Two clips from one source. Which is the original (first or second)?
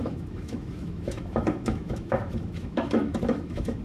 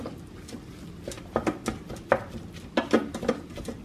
second